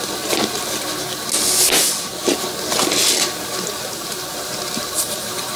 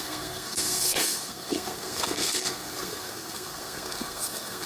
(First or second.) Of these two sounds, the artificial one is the second